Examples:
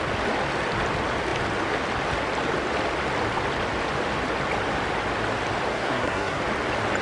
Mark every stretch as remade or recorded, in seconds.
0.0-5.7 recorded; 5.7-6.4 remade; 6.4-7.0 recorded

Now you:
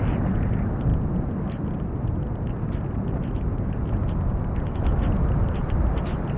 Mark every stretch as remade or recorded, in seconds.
0.0-6.4 recorded

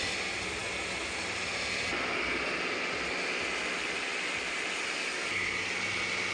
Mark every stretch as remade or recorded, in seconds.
0.0-6.3 recorded